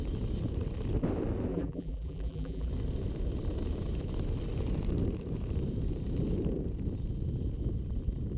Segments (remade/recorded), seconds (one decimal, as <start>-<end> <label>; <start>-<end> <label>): 0.0-1.5 recorded; 1.5-2.7 remade; 2.7-8.4 recorded